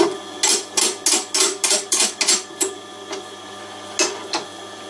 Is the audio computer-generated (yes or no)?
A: no